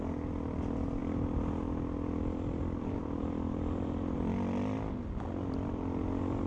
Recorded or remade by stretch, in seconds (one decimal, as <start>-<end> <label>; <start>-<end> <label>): 0.0-6.5 recorded